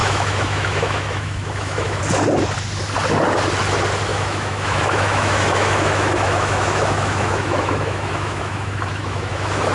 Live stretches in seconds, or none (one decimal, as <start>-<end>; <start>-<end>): 2.0-4.1